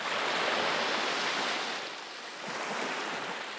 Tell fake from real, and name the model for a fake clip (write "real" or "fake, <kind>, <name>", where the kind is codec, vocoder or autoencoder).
real